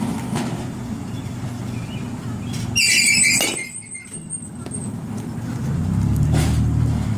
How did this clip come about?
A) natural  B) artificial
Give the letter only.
A